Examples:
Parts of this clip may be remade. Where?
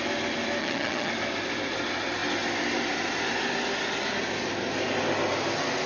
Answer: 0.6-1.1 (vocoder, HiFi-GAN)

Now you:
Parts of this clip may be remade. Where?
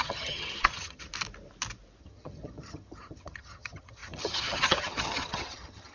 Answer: 0.0-1.1 (vocoder, HiFi-GAN); 2.0-5.9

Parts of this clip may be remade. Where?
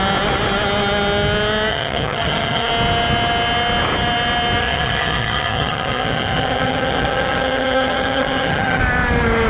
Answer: 1.7-2.7 (vocoder, HiFi-GAN); 4.6-8.8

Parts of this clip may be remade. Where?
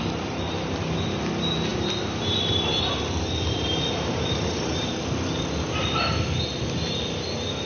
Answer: none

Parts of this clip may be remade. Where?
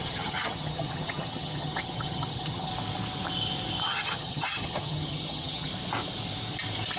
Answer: 0.0-2.7 (vocoder, HiFi-GAN); 3.8-5.7